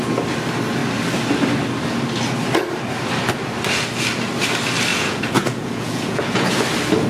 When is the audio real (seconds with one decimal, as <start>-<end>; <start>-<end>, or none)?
0.0-4.9; 6.5-7.1